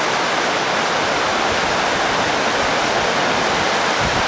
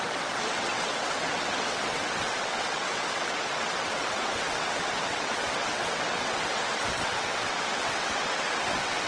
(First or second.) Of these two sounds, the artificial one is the second